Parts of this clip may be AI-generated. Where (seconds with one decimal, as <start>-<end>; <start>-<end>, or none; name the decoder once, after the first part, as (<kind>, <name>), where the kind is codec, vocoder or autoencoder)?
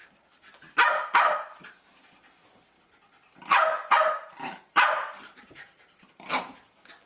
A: 3.6-6.4 (vocoder, BigVGAN v2)